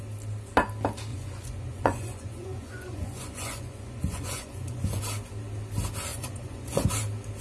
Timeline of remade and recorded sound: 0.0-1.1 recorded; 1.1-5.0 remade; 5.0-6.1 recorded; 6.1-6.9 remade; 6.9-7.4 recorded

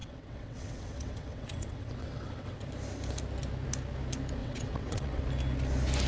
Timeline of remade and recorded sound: 0.0-2.6 remade; 2.6-4.4 recorded; 4.4-5.2 remade; 5.2-6.1 recorded

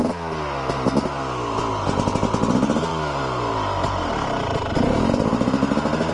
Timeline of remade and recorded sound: 0.0-6.1 recorded

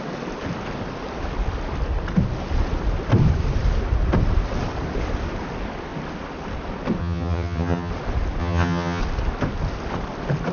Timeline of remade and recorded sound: 0.0-7.0 recorded; 7.0-7.9 remade; 7.9-8.4 recorded; 8.4-9.0 remade; 9.0-10.5 recorded

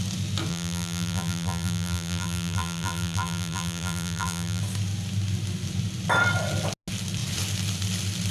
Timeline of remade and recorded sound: 0.0-0.5 recorded; 0.5-4.6 remade; 4.6-8.3 recorded

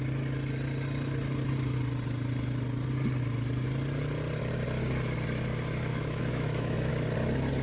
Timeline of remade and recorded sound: 0.0-5.9 recorded; 5.9-6.9 remade; 6.9-7.6 recorded